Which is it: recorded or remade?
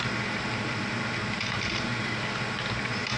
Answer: recorded